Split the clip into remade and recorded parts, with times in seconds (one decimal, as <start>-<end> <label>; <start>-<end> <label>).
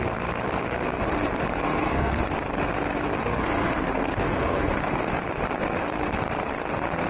0.0-1.5 recorded; 1.5-2.2 remade; 2.2-3.4 recorded; 3.4-5.1 remade; 5.1-7.1 recorded